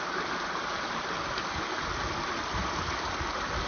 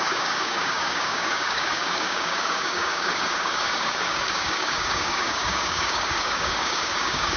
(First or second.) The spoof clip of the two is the second